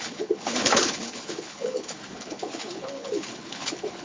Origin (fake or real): fake